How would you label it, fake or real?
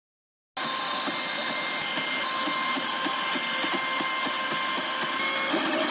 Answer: real